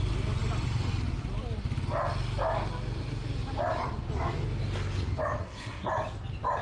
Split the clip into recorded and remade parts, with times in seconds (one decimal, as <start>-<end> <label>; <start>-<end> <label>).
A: 0.0-5.4 recorded; 5.4-5.9 remade; 5.9-6.6 recorded